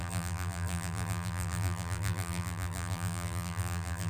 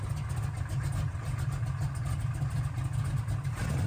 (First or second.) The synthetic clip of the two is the first